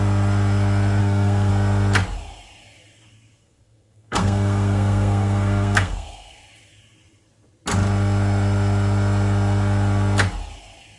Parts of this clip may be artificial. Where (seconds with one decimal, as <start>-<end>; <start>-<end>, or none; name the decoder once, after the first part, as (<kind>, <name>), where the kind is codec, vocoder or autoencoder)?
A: 1.0-1.5 (codec, SNAC); 3.4-6.4